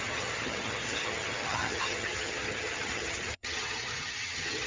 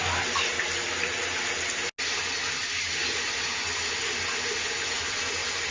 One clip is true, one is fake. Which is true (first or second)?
second